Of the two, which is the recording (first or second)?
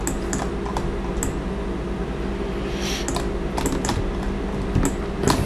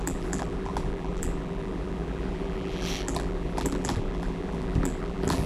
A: first